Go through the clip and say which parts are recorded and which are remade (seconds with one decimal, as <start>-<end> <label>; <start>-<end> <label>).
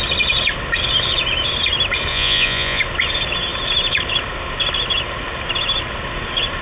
0.0-2.1 recorded; 2.1-2.8 remade; 2.8-6.6 recorded